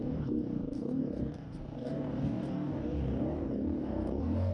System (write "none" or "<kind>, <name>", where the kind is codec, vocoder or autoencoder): codec, DAC